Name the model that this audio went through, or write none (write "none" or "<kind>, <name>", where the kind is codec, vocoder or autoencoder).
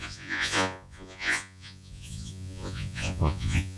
vocoder, Vocos